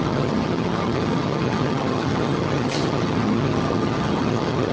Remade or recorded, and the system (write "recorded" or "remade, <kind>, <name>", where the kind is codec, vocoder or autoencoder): remade, vocoder, HiFi-GAN